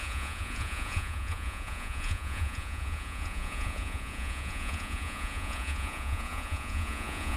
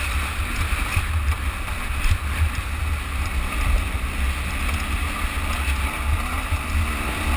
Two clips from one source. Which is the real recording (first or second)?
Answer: second